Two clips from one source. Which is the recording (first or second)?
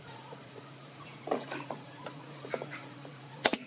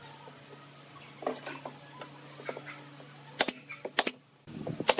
second